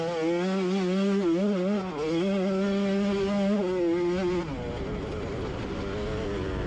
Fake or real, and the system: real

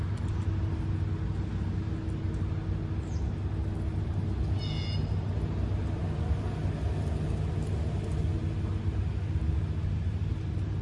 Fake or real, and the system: real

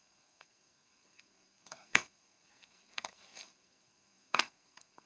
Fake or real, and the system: fake, codec, SNAC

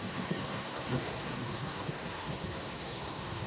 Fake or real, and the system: fake, codec, SNAC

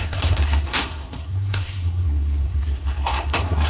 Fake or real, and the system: fake, codec, SNAC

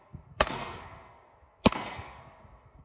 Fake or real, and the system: fake, codec, SNAC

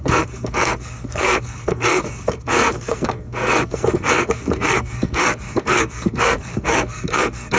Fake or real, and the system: fake, codec, SNAC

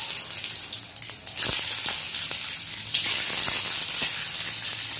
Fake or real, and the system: real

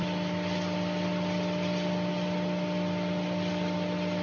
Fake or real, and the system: real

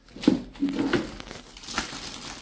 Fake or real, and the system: real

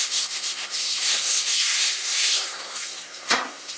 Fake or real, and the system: fake, codec, SNAC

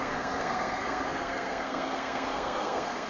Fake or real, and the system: fake, codec, SNAC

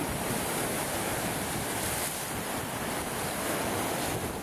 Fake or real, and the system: real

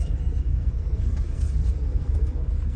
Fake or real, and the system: fake, codec, SNAC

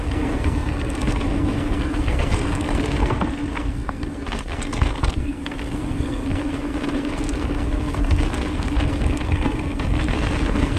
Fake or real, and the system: fake, codec, SNAC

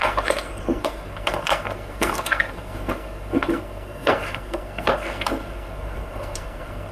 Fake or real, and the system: fake, codec, SNAC